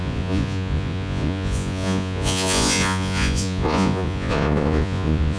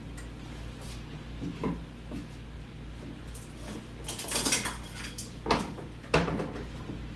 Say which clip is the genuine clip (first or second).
second